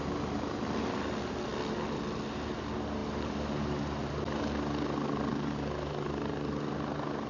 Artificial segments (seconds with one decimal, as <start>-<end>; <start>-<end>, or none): none